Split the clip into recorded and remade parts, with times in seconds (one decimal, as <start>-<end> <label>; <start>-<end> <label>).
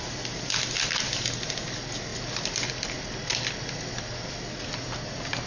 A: 0.0-5.5 recorded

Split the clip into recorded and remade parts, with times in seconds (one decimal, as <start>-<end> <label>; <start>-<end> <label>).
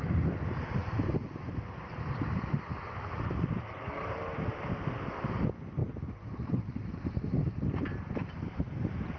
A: 0.0-5.8 recorded; 5.8-7.6 remade; 7.6-8.2 recorded; 8.2-9.2 remade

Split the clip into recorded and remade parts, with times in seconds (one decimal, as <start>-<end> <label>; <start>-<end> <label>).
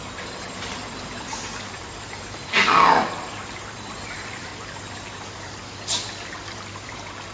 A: 0.0-2.4 remade; 2.4-3.2 recorded; 3.2-4.5 remade; 4.5-7.3 recorded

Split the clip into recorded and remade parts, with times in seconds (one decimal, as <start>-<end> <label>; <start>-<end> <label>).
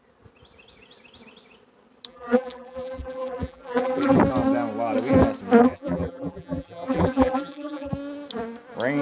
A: 0.0-2.1 recorded; 2.1-4.2 remade; 4.2-5.6 recorded; 5.6-7.9 remade; 7.9-9.0 recorded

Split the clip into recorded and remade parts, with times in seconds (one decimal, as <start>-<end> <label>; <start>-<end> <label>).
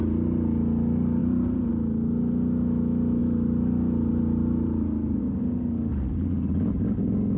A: 0.0-1.2 recorded; 1.2-1.7 remade; 1.7-3.2 recorded; 3.2-5.2 remade; 5.2-7.4 recorded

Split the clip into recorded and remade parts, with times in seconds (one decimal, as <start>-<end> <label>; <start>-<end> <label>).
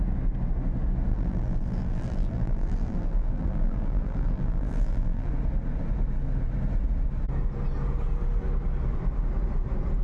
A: 0.0-1.1 recorded; 1.1-5.3 remade; 5.3-10.0 recorded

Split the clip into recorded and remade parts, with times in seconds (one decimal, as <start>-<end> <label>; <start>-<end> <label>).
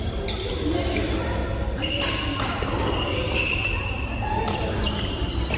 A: 0.0-1.4 remade; 1.4-4.8 recorded; 4.8-5.6 remade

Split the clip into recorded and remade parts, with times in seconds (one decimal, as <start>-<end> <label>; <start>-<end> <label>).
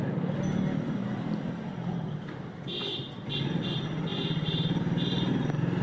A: 0.0-1.0 recorded; 1.0-3.1 remade; 3.1-4.1 recorded; 4.1-5.3 remade; 5.3-5.8 recorded